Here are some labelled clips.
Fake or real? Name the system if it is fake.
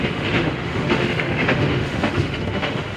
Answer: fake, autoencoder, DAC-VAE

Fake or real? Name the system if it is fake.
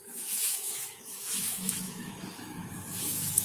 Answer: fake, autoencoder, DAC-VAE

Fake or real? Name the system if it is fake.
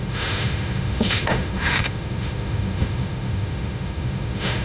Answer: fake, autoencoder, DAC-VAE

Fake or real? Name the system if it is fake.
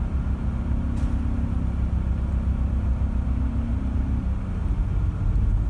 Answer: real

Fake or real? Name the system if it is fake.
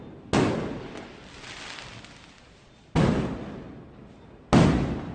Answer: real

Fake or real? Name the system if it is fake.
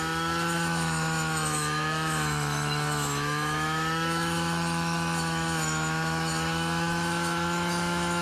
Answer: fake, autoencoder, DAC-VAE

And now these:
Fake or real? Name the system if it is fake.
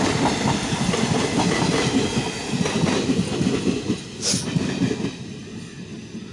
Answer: real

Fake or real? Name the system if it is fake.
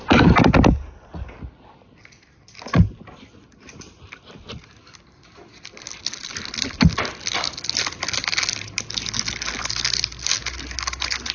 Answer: real